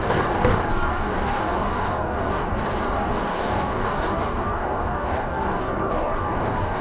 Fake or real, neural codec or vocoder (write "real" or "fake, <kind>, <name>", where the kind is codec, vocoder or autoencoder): fake, codec, DAC